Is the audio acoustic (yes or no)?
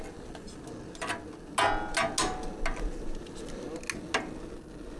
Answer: yes